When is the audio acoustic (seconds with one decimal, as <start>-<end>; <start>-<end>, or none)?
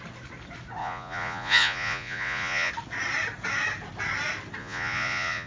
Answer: 0.0-0.8; 2.7-4.6